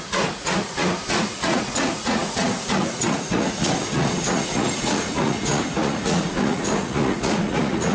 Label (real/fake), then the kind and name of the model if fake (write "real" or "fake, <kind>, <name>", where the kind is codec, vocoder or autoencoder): fake, vocoder, Vocos